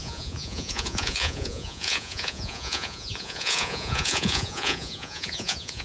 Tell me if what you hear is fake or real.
fake